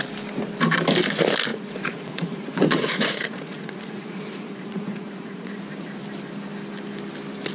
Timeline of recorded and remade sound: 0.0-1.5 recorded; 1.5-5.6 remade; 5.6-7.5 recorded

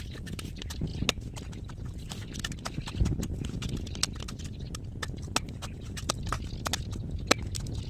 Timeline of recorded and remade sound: 0.0-7.9 recorded

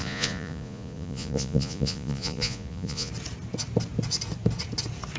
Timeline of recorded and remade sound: 0.0-3.1 remade; 3.1-5.2 recorded